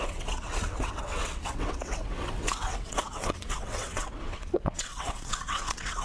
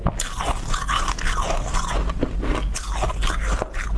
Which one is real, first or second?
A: second